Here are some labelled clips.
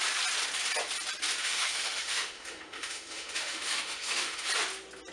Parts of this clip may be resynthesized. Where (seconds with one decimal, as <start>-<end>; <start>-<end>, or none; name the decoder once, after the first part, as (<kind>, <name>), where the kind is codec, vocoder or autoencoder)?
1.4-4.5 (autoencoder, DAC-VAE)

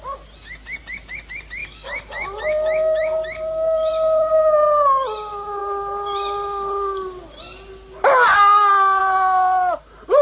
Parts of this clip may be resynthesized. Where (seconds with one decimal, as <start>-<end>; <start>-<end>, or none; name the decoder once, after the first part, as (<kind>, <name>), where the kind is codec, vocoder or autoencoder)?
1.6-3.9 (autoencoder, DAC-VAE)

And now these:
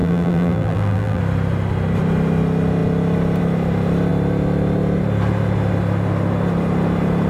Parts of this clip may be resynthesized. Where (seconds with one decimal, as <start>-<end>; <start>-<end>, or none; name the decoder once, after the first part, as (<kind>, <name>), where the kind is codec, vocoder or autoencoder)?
0.0-1.2 (vocoder, BigVGAN v2)

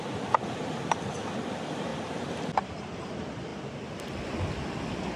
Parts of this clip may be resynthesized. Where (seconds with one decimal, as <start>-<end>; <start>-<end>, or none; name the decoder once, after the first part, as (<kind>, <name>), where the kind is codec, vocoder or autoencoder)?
none

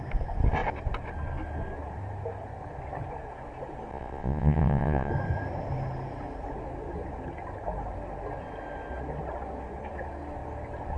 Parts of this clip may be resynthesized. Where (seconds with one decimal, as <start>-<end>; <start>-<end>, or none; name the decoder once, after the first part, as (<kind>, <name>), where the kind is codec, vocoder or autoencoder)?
3.9-5.1 (vocoder, Vocos)

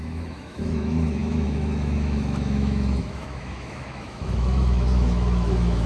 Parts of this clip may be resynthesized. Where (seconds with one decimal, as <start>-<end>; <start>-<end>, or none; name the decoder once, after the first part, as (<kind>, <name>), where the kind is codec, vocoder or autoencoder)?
0.0-5.9 (autoencoder, DAC-VAE)

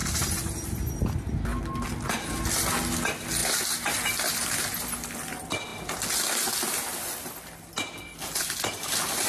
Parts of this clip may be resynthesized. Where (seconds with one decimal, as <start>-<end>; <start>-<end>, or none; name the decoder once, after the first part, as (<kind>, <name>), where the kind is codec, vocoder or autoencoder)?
none